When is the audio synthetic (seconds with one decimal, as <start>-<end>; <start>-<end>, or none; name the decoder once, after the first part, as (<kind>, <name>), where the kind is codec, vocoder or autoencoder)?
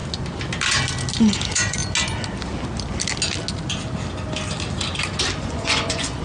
1.2-1.8 (vocoder, Vocos); 5.4-6.2